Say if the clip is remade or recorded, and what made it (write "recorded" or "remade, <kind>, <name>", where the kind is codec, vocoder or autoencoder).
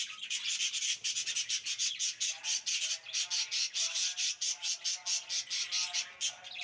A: recorded